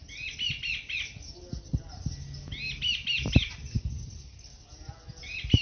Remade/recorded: recorded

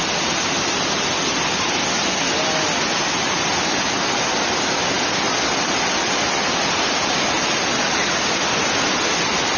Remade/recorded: recorded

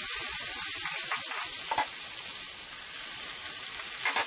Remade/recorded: recorded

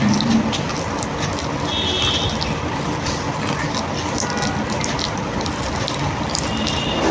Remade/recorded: recorded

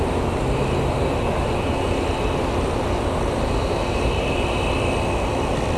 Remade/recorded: recorded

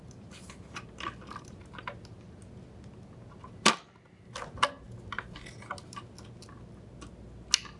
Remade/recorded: recorded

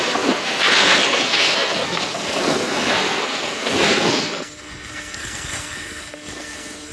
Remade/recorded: remade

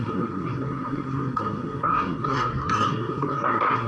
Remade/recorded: remade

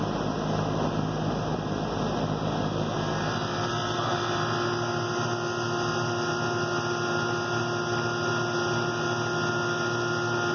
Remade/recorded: recorded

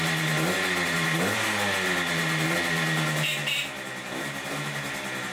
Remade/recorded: recorded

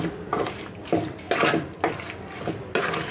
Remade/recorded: recorded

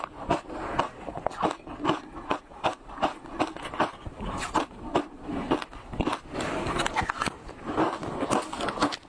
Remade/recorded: recorded